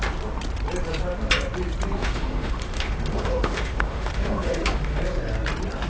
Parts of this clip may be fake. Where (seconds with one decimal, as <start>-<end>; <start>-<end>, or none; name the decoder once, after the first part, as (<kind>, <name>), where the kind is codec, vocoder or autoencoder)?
2.0-5.0 (autoencoder, DAC-VAE)